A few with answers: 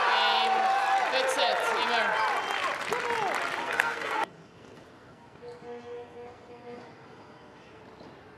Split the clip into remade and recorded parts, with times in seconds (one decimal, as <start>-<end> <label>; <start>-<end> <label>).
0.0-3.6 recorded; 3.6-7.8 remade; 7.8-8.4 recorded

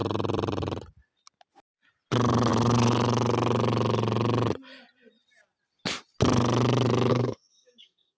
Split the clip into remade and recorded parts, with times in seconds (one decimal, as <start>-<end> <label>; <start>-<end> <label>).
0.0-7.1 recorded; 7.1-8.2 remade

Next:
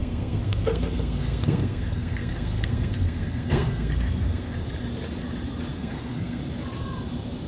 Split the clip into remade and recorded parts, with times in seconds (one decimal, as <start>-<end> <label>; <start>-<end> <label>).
0.0-4.5 remade; 4.5-5.7 recorded; 5.7-6.4 remade; 6.4-7.5 recorded

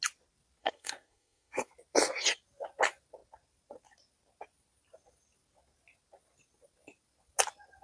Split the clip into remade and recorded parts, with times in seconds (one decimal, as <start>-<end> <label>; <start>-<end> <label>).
0.0-0.6 recorded; 0.6-1.7 remade; 1.7-7.8 recorded

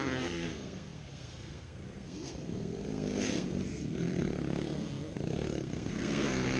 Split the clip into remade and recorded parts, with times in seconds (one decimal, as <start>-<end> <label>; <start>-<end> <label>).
0.0-6.6 remade

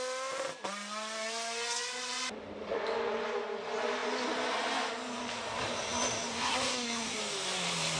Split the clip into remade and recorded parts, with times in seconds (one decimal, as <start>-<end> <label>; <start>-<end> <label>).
0.0-6.3 recorded; 6.3-7.2 remade; 7.2-8.0 recorded

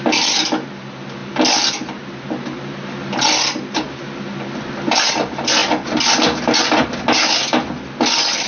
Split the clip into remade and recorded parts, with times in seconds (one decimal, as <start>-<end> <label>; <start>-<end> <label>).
0.0-8.5 recorded

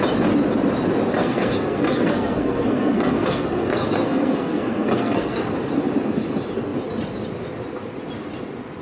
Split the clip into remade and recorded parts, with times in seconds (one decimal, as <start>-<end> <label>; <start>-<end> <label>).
0.0-1.2 recorded; 1.2-5.4 remade; 5.4-8.8 recorded